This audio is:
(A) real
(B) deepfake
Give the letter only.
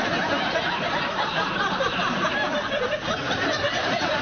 B